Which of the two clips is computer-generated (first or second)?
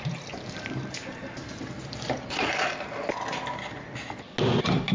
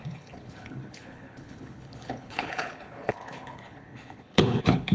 second